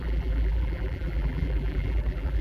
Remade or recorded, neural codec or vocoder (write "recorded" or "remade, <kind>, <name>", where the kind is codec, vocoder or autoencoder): remade, vocoder, BigVGAN v2